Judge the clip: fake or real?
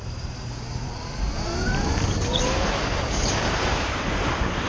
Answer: fake